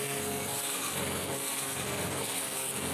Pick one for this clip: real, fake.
fake